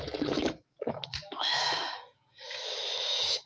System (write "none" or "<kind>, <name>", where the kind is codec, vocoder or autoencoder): autoencoder, DAC-VAE